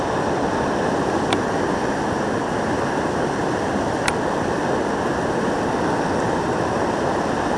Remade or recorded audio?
remade